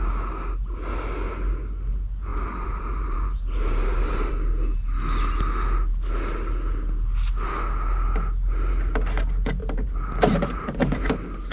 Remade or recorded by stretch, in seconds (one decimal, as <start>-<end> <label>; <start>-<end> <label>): 0.0-2.3 recorded; 2.3-4.3 remade; 4.3-9.6 recorded; 9.6-11.1 remade; 11.1-11.5 recorded

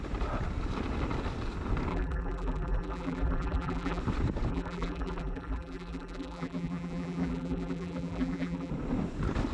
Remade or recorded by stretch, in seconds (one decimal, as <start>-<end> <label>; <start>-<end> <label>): 0.0-1.9 recorded; 1.9-4.0 remade; 4.0-4.5 recorded; 4.5-8.7 remade; 8.7-9.5 recorded

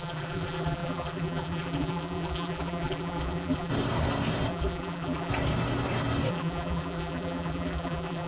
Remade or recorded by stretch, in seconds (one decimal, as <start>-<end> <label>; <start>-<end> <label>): 0.0-3.7 remade; 3.7-4.5 recorded; 4.5-5.3 remade; 5.3-6.3 recorded; 6.3-8.3 remade

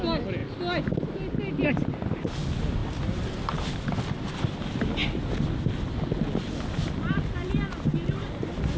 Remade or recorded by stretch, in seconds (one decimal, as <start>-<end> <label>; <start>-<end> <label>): 0.0-2.8 recorded; 2.8-3.6 remade; 3.6-8.8 recorded

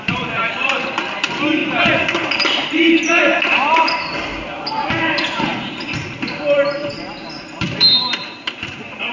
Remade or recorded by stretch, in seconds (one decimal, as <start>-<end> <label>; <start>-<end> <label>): 0.0-4.3 remade; 4.3-5.0 recorded; 5.0-9.1 remade

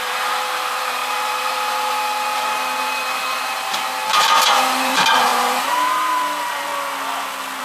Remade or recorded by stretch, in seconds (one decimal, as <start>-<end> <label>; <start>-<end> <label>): 0.0-6.7 remade; 6.7-7.6 recorded